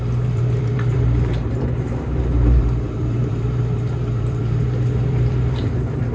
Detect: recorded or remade remade